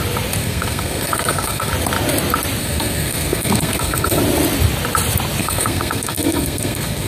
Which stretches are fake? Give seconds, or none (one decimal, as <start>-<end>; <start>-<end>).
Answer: 0.4-1.7; 2.6-4.2; 5.4-7.1